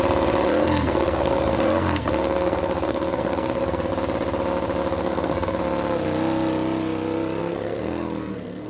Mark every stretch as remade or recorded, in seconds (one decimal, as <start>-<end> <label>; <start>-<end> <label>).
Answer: 0.0-0.6 recorded; 0.6-3.9 remade; 3.9-4.9 recorded; 4.9-5.6 remade; 5.6-7.4 recorded; 7.4-8.7 remade